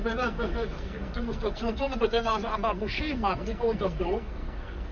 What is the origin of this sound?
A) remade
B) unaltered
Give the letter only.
A